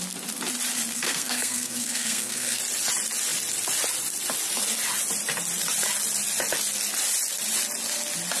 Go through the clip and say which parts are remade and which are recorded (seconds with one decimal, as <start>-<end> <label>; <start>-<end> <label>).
0.0-0.9 recorded; 0.9-2.6 remade; 2.6-8.4 recorded